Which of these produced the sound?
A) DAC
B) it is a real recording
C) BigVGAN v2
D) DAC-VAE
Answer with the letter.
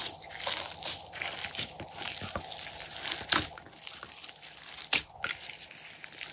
B